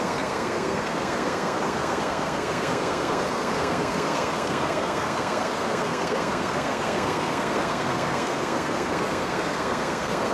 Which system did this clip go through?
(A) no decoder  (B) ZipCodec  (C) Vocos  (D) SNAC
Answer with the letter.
D